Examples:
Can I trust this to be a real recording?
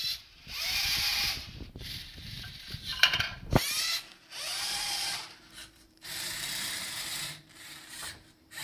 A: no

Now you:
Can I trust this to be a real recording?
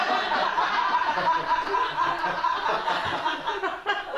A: yes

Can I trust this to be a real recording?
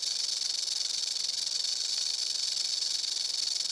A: yes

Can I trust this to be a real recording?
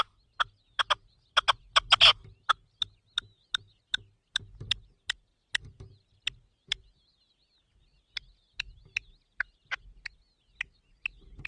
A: yes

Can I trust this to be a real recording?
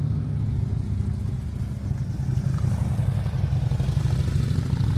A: yes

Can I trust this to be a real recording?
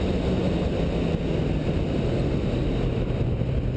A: yes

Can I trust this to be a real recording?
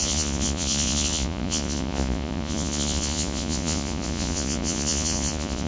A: no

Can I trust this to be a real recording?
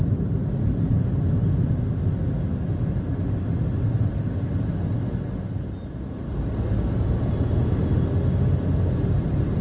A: yes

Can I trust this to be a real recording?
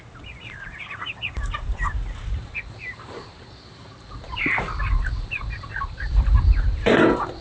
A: no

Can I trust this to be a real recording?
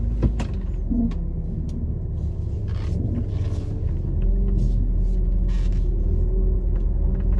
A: yes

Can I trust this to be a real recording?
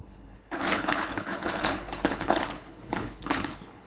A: no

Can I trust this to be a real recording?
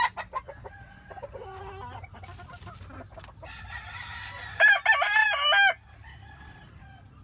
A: yes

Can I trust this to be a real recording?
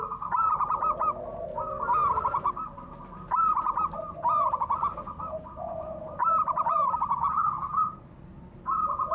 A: yes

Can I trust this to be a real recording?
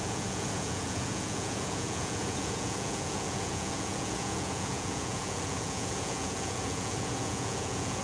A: no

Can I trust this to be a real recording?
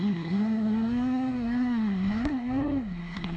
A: no